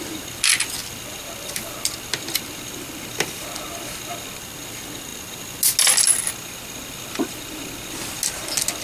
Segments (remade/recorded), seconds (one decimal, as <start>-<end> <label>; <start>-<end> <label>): 0.0-8.8 recorded